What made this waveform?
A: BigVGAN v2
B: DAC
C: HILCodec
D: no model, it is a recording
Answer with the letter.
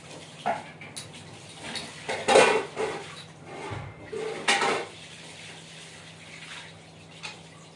D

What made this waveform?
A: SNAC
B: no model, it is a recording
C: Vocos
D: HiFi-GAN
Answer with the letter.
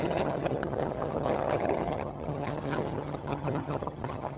D